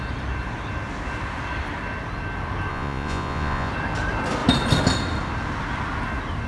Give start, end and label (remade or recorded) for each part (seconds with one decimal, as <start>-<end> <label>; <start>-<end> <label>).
0.0-2.7 recorded; 2.7-3.7 remade; 3.7-6.5 recorded